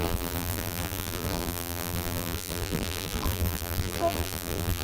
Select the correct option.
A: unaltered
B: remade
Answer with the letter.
B